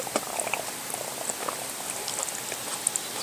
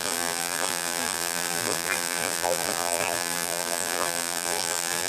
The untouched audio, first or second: first